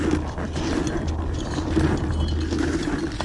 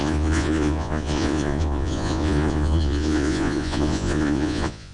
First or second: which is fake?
second